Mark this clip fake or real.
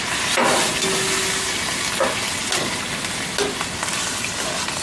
real